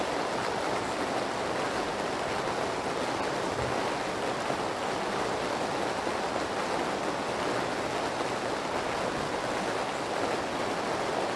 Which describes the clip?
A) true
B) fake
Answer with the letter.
A